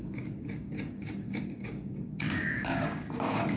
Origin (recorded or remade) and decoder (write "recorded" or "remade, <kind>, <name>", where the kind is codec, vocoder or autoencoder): remade, codec, DAC